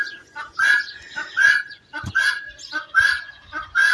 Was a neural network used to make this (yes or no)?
yes